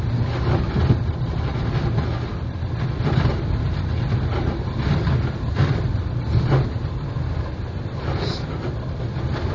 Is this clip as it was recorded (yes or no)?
yes